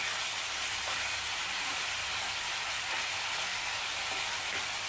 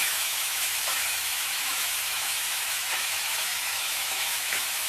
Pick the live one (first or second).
first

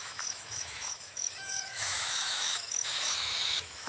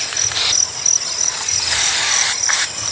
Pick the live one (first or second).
second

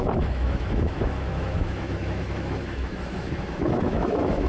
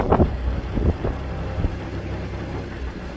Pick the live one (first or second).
second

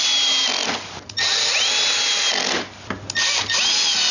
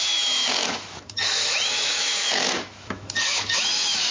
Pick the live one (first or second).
first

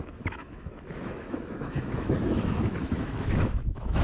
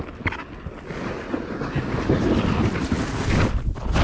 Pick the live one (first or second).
second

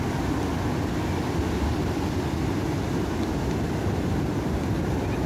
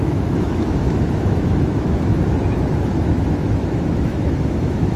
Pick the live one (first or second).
first